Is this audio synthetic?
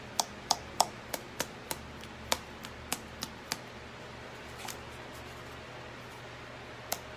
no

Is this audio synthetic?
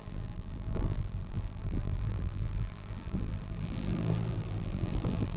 yes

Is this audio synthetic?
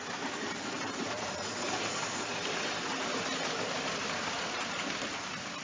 yes